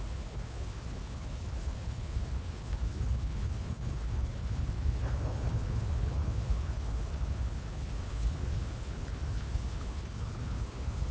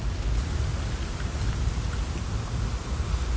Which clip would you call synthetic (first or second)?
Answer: first